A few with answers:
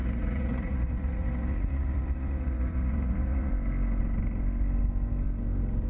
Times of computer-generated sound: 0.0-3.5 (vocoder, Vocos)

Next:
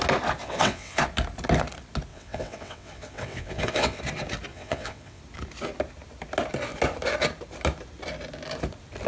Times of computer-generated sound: 0.4-1.0 (vocoder, WaveNeXt); 2.1-4.0; 4.5-5.2

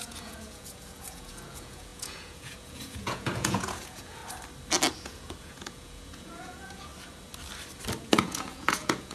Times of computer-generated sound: 0.0-4.2 (vocoder, Vocos); 4.9-6.9; 8.0-9.1